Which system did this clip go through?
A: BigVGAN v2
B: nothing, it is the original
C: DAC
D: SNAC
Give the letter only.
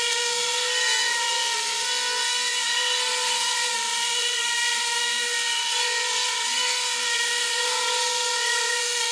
D